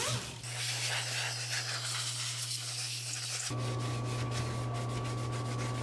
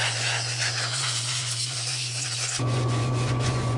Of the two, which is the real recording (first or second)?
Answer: first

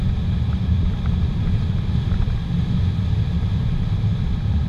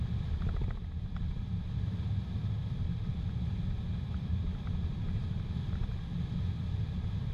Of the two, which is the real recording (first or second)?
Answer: first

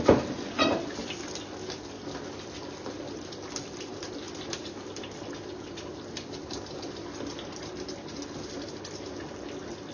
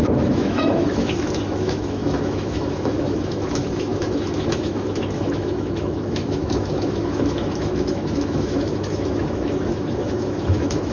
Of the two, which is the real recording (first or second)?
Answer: first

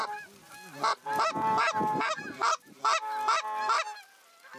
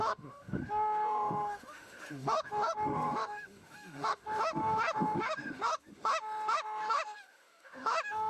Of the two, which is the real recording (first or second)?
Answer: first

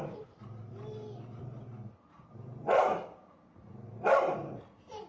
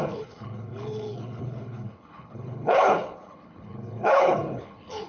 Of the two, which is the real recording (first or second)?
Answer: first